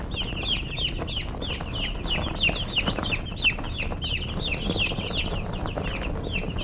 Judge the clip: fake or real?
real